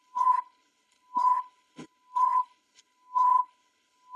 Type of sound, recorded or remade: remade